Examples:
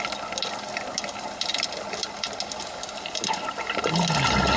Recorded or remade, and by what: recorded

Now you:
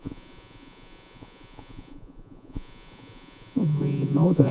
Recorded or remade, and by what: remade, vocoder, Vocos